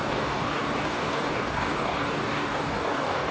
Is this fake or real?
fake